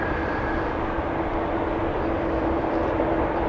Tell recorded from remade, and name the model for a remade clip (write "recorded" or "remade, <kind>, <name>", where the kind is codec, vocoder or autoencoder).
remade, vocoder, BigVGAN v2